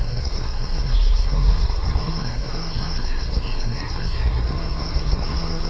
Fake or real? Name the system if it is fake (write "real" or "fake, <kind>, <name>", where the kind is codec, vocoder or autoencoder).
fake, codec, SNAC